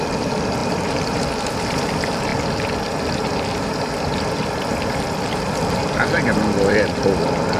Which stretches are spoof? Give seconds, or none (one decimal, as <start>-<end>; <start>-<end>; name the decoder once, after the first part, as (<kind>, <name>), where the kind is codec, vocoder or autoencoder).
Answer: none